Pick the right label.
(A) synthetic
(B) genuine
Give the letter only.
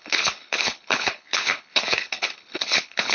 A